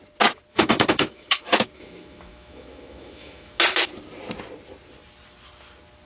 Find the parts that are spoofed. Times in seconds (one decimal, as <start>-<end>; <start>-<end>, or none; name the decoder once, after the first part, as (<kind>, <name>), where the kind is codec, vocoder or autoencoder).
0.5-3.6 (autoencoder, DAC-VAE)